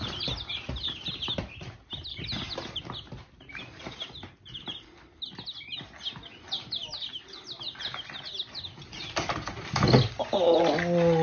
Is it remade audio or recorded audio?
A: recorded